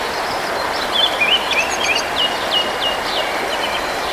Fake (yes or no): no